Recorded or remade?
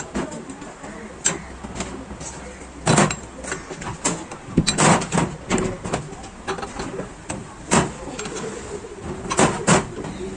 recorded